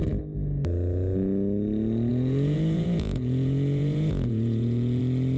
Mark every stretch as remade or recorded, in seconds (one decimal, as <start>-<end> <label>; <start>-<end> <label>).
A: 0.0-2.1 recorded; 2.1-5.0 remade; 5.0-5.4 recorded